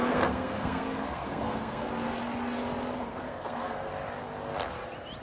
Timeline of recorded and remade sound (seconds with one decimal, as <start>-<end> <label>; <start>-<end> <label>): 0.0-1.9 remade; 1.9-2.9 recorded; 2.9-3.9 remade; 3.9-5.2 recorded